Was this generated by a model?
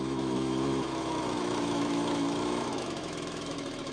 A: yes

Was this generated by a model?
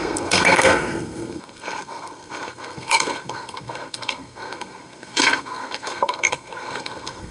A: yes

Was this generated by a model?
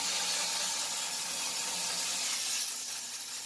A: no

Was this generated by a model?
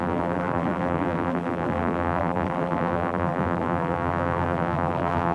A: yes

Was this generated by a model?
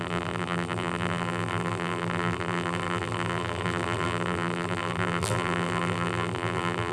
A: yes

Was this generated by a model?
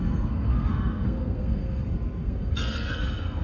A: yes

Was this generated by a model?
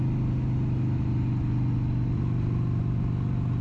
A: no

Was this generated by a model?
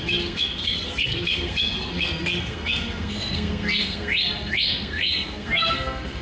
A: yes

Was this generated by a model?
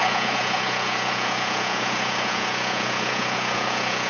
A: yes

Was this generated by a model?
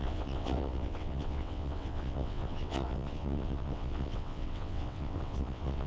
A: yes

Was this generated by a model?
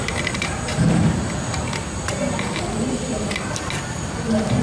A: no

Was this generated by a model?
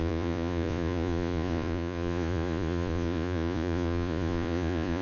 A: yes